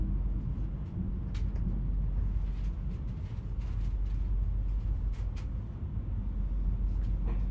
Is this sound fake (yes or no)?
no